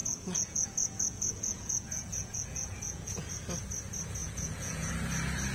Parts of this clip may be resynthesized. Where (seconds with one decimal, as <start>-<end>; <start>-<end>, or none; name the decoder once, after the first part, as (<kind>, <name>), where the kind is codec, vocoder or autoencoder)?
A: 0.0-3.3 (vocoder, Vocos); 4.2-4.9